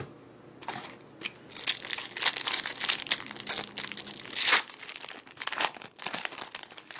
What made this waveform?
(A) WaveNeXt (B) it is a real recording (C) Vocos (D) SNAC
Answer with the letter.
B